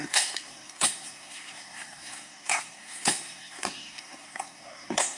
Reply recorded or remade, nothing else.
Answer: remade